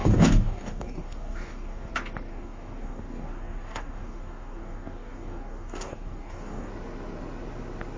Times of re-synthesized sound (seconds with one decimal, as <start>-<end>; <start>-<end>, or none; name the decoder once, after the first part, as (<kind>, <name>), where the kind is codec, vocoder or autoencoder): 0.0-1.9 (codec, DAC); 2.3-6.7